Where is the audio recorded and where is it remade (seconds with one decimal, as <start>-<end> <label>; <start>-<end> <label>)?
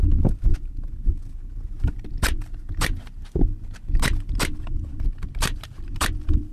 0.0-6.5 remade